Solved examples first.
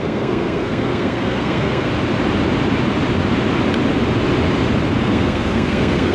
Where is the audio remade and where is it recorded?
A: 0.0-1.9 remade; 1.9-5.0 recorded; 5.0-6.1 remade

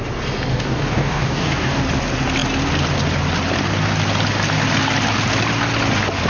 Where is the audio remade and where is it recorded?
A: 0.0-0.5 recorded; 0.5-1.8 remade; 1.8-6.3 recorded